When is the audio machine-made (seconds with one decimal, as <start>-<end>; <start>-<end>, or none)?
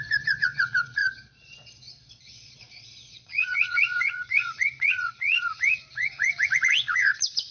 0.0-7.5